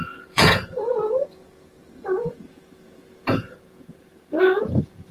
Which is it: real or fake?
fake